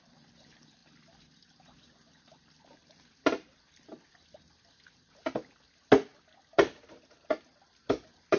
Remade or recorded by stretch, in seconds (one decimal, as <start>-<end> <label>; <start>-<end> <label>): 0.0-8.4 recorded